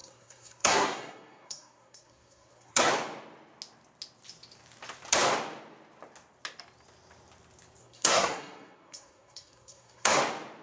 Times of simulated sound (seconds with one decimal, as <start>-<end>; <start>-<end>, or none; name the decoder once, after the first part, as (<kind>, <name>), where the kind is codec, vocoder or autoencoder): 0.0-2.9 (codec, SNAC); 7.8-10.2